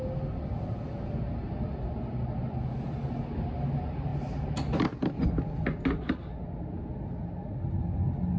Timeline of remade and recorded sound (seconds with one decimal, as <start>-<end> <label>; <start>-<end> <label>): 0.0-8.4 recorded